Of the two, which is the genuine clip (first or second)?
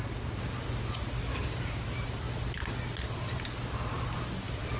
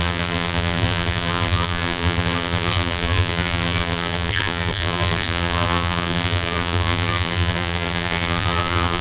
first